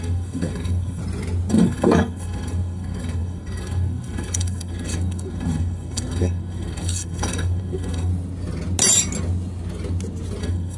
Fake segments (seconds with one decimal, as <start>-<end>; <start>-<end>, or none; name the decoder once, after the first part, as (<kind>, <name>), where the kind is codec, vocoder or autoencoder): 0.0-1.0 (codec, SNAC); 1.5-8.1; 10.4-10.8